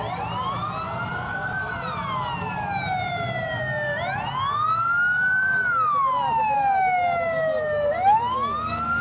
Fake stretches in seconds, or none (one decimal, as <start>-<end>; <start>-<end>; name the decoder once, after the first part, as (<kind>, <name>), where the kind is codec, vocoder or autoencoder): 1.1-1.7 (vocoder, BigVGAN v2)